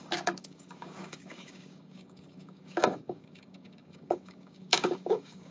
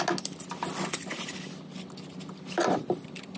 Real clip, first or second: second